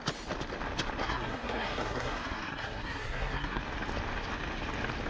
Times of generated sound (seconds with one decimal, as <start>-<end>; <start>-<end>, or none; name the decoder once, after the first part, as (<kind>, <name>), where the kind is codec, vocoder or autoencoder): 1.0-3.6 (codec, SNAC)